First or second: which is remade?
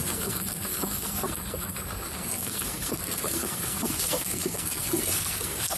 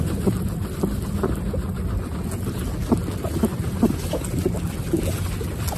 first